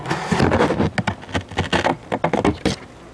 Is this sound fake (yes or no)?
no